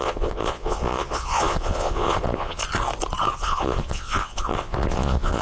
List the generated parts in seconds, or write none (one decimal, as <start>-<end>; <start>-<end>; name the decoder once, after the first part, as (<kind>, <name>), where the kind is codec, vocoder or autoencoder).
0.0-2.6 (vocoder, Vocos); 3.4-5.4